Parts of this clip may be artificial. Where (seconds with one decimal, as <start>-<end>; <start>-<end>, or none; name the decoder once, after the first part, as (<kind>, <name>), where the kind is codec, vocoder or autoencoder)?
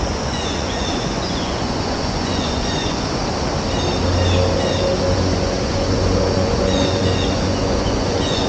0.0-3.2 (vocoder, Vocos); 5.1-8.5